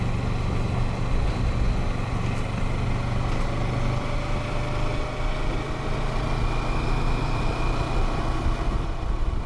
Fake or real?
real